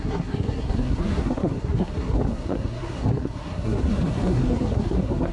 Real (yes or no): no